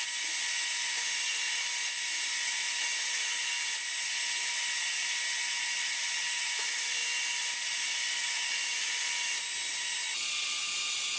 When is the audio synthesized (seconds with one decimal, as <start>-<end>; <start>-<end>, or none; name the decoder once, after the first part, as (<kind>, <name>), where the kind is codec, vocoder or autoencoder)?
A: none